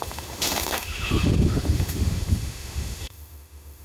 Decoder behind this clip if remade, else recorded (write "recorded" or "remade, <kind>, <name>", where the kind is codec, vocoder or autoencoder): remade, autoencoder, DAC-VAE